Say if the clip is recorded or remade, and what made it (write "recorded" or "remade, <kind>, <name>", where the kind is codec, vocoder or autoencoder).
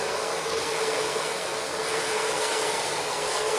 remade, codec, SNAC